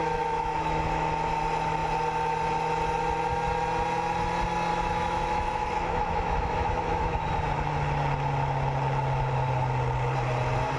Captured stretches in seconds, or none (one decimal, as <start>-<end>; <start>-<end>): 1.1-4.7; 7.3-10.8